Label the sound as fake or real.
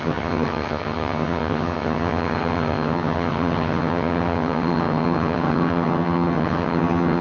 fake